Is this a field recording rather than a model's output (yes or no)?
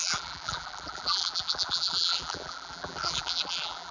no